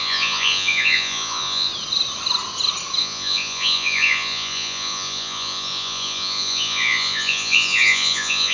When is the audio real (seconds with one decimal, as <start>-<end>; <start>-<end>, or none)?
1.7-3.0